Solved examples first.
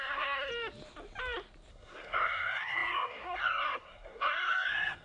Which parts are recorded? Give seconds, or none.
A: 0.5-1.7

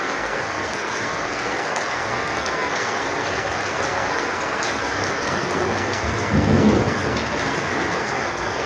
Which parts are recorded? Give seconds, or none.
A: none

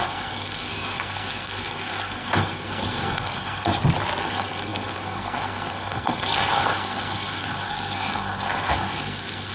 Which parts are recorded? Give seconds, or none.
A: 3.7-4.2